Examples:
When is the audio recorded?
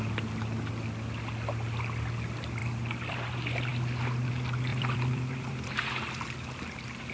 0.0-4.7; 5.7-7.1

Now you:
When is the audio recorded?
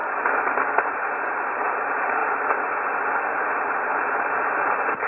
none